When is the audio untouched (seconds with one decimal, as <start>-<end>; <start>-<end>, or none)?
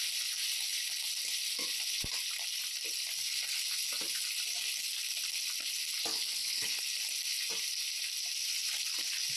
0.0-6.1; 6.8-9.4